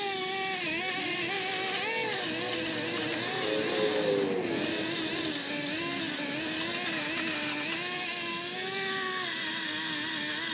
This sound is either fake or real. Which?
real